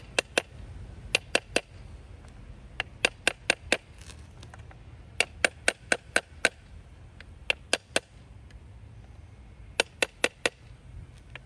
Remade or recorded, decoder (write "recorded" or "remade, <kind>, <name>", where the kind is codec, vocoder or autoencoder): recorded